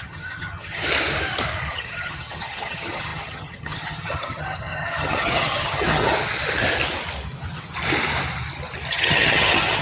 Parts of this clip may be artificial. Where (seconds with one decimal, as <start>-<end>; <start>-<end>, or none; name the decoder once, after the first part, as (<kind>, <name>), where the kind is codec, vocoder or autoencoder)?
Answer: 0.0-0.8 (vocoder, HiFi-GAN); 1.7-6.1; 8.9-9.8

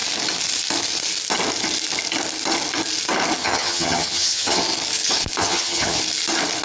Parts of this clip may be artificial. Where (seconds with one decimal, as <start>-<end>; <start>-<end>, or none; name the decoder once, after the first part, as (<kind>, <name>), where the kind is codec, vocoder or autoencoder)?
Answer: 3.4-4.6 (vocoder, HiFi-GAN); 5.4-6.0

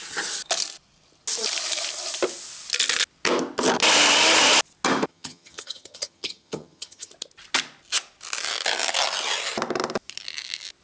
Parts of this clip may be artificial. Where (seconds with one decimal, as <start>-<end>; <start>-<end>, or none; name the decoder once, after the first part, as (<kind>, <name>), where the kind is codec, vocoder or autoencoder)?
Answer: 5.1-7.1 (vocoder, HiFi-GAN)

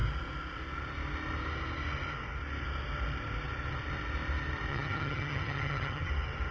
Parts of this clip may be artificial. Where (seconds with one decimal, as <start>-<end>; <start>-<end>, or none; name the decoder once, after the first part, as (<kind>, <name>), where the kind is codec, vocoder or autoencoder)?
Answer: 4.7-6.1 (vocoder, HiFi-GAN)

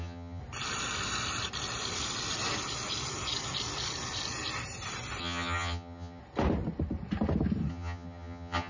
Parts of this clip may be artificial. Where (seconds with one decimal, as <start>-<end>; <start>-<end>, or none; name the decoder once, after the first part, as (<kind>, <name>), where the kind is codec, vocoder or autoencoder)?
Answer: 0.0-0.4 (vocoder, HiFi-GAN); 5.2-6.2; 7.7-8.7

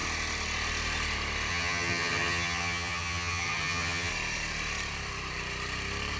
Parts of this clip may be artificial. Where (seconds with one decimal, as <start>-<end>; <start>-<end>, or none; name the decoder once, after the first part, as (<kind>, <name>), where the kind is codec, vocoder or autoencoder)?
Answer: 1.5-4.1 (vocoder, HiFi-GAN)

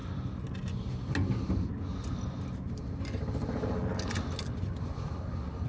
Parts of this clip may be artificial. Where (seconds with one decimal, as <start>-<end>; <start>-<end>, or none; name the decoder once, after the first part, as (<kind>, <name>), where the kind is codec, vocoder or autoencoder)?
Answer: none

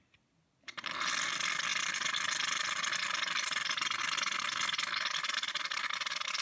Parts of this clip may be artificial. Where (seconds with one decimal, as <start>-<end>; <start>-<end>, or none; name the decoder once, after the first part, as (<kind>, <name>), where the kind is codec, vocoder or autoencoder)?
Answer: none